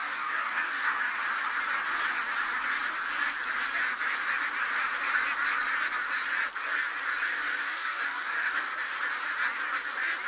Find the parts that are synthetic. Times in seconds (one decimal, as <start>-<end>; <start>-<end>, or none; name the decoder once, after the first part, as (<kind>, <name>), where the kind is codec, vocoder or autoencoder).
0.0-1.1 (codec, DAC); 7.3-8.7